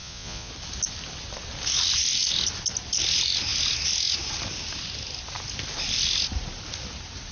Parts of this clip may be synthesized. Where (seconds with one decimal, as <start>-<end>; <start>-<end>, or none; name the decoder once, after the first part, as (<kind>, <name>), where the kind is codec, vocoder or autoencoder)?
0.0-0.5 (vocoder, Vocos)